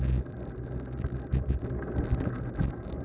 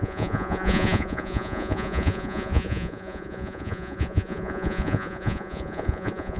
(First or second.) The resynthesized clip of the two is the second